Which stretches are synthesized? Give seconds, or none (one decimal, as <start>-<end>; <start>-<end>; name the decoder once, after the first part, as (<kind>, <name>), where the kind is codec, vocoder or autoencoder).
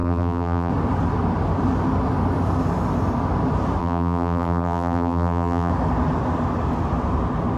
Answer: 0.0-0.7 (vocoder, BigVGAN v2); 3.8-5.7